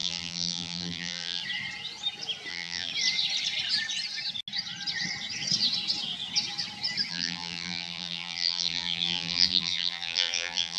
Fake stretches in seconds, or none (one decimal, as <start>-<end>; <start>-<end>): 0.0-1.4; 2.5-2.9; 7.1-10.8